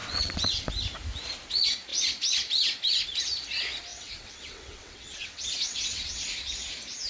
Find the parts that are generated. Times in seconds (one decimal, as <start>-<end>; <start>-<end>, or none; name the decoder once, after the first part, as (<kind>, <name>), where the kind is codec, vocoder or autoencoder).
0.0-0.7 (vocoder, WaveNeXt); 3.9-6.2